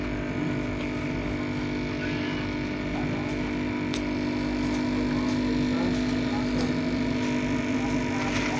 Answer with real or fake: real